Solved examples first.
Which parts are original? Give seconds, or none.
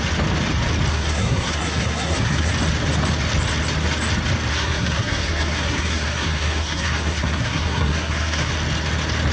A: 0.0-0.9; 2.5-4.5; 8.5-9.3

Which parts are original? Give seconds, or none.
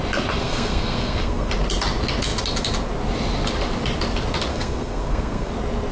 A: 0.0-0.4; 1.5-4.5; 5.5-5.9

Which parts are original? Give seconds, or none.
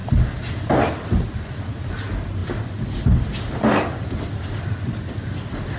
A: 0.0-5.8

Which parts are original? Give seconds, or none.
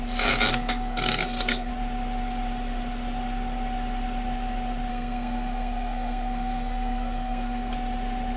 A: 0.0-0.5; 1.7-4.9; 7.7-8.4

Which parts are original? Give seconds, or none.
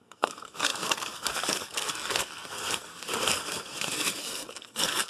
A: none